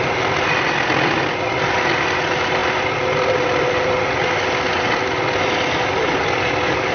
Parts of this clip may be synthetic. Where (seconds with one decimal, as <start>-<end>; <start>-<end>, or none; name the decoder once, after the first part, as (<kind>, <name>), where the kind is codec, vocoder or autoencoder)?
none